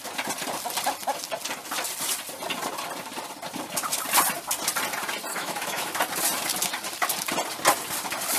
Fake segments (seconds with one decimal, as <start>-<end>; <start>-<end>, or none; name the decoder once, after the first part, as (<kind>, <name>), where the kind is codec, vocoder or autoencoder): 5.3-6.0 (autoencoder, DAC-VAE)